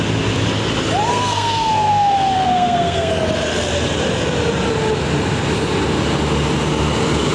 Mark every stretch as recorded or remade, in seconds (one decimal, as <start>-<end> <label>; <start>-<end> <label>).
0.0-1.1 recorded; 1.1-3.1 remade; 3.1-7.3 recorded